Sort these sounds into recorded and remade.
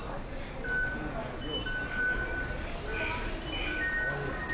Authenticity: recorded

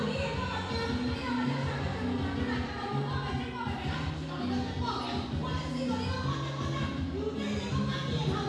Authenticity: recorded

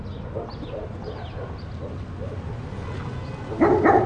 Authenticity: recorded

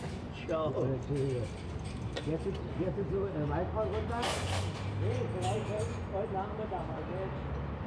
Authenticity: recorded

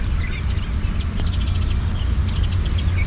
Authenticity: recorded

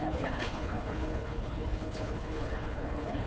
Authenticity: remade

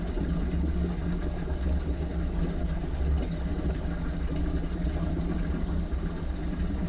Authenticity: recorded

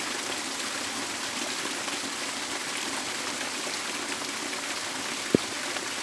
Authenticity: recorded